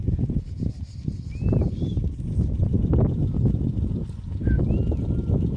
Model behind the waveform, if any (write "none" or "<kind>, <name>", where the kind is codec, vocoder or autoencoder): none